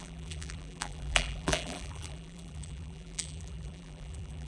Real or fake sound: fake